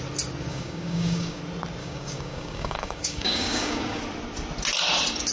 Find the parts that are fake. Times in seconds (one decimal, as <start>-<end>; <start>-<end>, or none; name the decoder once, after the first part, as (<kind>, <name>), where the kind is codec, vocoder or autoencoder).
0.5-1.4 (codec, DAC); 1.8-4.0